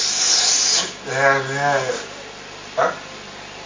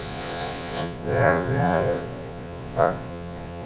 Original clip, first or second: first